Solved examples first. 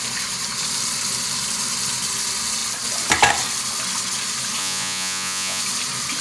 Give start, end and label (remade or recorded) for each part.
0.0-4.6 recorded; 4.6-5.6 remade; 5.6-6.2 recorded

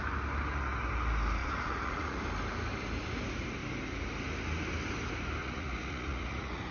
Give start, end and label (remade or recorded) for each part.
0.0-1.4 recorded; 1.4-2.2 remade; 2.2-5.4 recorded; 5.4-6.7 remade

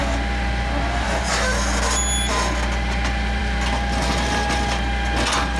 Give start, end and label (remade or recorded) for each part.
0.0-5.6 recorded

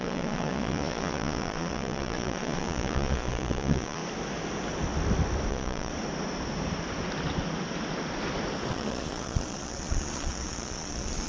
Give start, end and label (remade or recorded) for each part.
0.0-4.0 remade; 4.0-5.5 recorded; 5.5-5.9 remade; 5.9-8.7 recorded; 8.7-11.3 remade

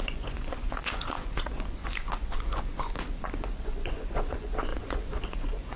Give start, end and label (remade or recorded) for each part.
0.0-5.8 remade

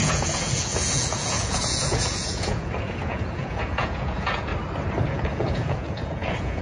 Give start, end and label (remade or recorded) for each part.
0.0-4.5 remade; 4.5-5.1 recorded; 5.1-6.6 remade